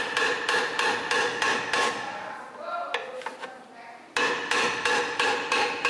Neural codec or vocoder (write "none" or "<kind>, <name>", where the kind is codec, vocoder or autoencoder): none